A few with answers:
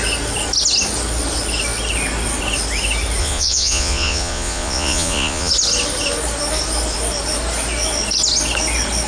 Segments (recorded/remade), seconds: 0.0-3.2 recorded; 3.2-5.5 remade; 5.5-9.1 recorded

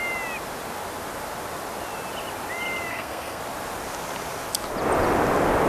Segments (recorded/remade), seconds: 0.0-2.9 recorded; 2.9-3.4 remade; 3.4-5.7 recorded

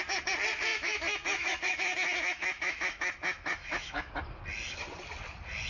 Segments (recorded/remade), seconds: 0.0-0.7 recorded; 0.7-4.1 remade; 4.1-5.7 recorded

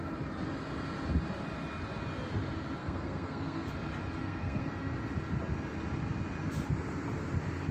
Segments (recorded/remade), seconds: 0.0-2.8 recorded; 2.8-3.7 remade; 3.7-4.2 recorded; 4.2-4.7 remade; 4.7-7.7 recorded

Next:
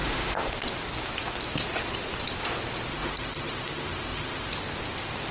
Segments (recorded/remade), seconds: 0.0-0.5 remade; 0.5-2.9 recorded; 2.9-4.5 remade; 4.5-5.3 recorded

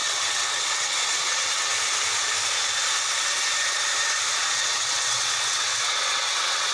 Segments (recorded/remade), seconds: 0.0-1.7 remade; 1.7-4.5 recorded; 4.5-6.7 remade